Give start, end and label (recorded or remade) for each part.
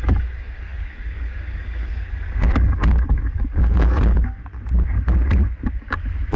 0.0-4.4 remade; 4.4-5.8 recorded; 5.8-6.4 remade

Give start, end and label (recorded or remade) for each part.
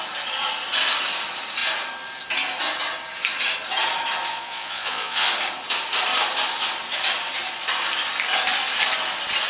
0.0-4.3 recorded; 4.3-5.3 remade; 5.3-9.5 recorded